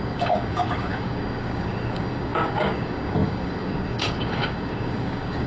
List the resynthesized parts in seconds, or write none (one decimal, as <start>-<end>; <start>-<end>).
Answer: 0.0-5.5